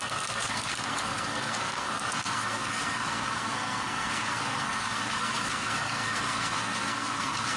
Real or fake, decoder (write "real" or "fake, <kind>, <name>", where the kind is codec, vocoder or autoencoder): fake, codec, SNAC